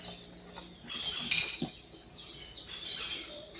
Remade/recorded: recorded